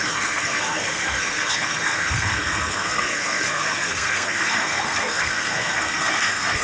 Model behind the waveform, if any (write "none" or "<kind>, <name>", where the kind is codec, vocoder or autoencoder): codec, SNAC